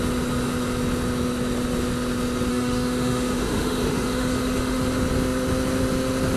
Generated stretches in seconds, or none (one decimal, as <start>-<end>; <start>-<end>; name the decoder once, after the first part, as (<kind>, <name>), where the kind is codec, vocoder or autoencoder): 2.5-4.8 (autoencoder, DAC-VAE)